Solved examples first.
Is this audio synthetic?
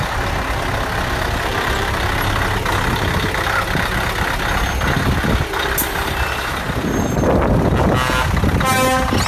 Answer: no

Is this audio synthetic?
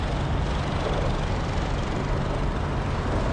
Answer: no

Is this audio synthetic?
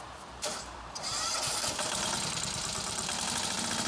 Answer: yes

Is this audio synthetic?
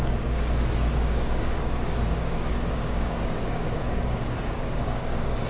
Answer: yes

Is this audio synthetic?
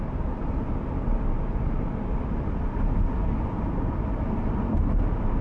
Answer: no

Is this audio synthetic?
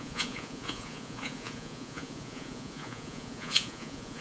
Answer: yes